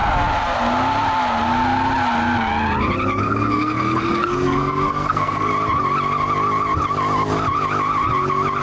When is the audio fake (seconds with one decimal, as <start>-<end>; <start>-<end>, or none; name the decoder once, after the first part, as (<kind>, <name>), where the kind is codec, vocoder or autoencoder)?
3.2-5.5 (codec, SNAC)